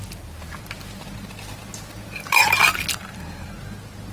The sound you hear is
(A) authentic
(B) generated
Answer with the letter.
A